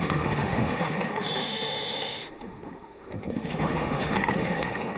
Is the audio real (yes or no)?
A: no